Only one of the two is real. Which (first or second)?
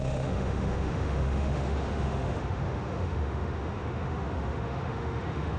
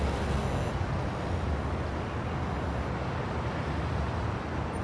second